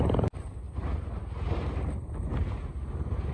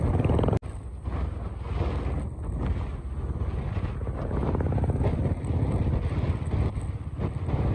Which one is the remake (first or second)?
first